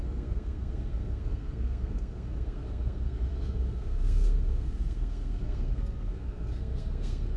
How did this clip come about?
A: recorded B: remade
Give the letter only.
B